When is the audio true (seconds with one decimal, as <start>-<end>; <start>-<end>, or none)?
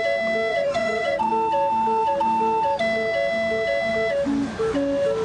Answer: 0.0-0.5; 1.3-5.2